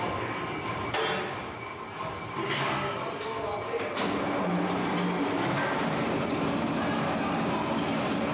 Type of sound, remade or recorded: recorded